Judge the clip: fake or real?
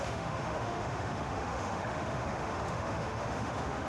fake